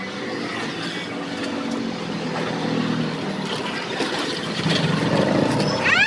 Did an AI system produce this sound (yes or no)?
no